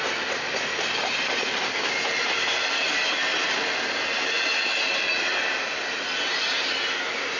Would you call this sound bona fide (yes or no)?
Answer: yes